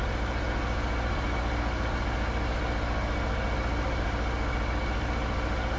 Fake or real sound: real